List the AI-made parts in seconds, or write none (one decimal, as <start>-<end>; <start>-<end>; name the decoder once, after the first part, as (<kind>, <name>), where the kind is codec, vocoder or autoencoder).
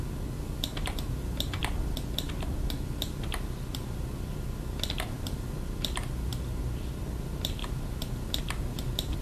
none